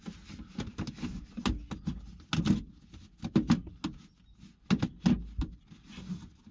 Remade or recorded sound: recorded